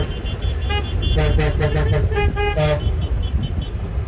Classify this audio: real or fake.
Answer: real